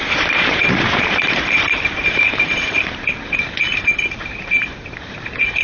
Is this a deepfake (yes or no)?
yes